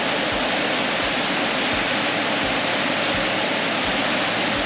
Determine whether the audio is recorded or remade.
recorded